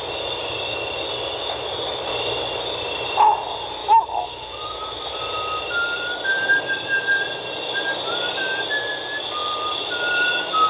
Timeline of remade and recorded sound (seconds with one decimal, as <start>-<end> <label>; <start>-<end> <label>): 0.0-3.8 recorded; 3.8-5.1 remade; 5.1-10.7 recorded